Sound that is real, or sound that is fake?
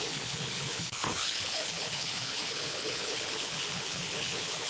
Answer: fake